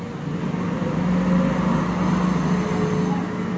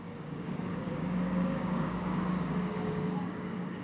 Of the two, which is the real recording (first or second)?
first